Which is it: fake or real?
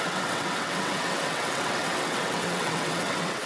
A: fake